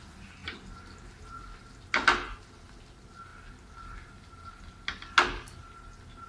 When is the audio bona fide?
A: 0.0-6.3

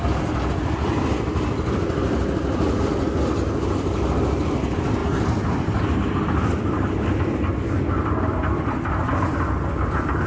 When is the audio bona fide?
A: 0.0-10.3

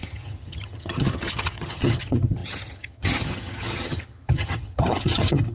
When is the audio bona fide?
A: none